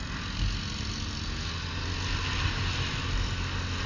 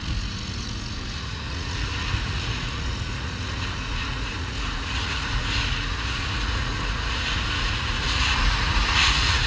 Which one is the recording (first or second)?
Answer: first